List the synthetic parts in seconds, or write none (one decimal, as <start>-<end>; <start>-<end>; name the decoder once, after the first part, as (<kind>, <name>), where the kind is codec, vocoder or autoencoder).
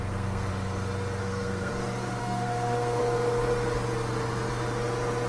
0.0-0.5 (codec, SNAC); 1.2-1.7; 2.2-3.0